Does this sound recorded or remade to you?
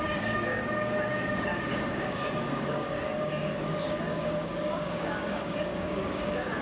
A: remade